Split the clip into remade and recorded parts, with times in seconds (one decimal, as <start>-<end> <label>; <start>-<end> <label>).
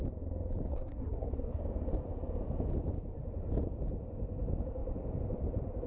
0.0-0.7 recorded; 0.7-1.6 remade; 1.6-5.9 recorded